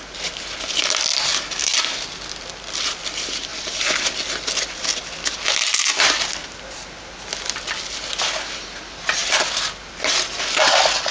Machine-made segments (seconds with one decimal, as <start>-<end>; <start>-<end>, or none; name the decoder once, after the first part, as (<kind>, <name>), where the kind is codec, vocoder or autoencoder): none